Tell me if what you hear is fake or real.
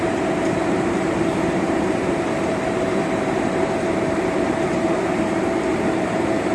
fake